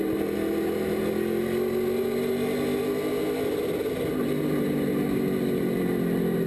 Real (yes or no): yes